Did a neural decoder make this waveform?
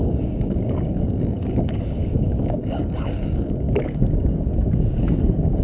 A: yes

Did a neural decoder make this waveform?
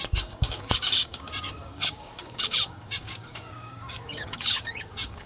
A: yes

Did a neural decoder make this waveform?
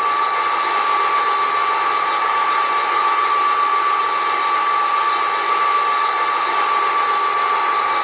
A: no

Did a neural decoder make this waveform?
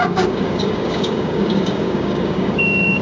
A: yes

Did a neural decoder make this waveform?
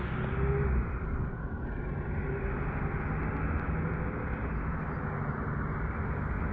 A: no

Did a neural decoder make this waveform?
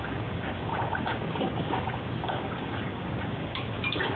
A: yes